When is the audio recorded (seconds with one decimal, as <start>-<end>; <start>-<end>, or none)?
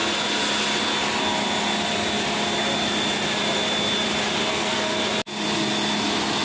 0.0-4.5; 5.0-6.4